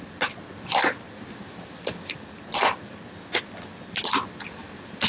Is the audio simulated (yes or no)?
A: no